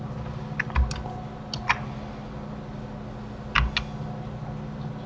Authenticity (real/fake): real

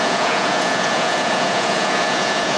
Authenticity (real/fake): fake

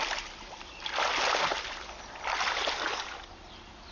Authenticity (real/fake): real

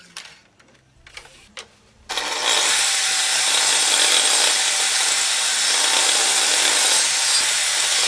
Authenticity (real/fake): real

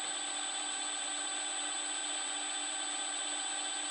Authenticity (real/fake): real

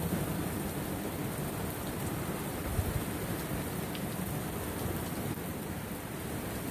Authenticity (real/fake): real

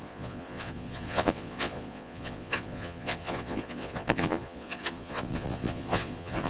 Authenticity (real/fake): fake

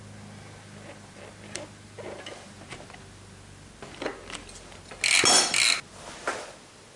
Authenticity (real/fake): real